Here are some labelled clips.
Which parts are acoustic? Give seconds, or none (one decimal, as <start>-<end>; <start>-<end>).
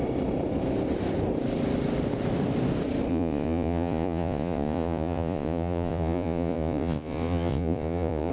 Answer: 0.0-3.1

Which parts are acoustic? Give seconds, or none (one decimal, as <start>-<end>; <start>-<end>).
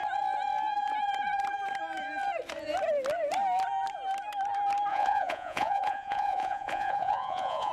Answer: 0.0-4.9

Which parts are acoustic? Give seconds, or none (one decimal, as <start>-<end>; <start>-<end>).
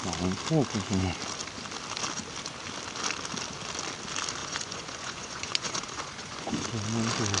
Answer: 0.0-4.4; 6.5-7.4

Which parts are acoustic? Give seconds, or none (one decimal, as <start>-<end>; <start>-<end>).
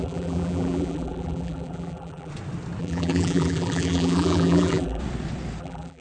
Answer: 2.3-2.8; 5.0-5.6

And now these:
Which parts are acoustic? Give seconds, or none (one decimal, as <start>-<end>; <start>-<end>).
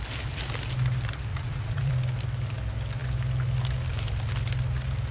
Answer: 0.0-1.3; 1.9-5.1